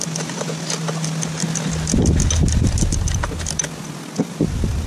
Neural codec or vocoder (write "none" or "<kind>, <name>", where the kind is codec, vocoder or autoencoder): none